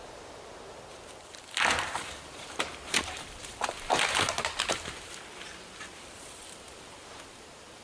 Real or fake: fake